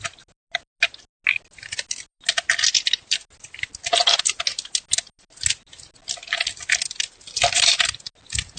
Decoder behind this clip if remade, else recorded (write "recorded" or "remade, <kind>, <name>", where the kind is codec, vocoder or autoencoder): recorded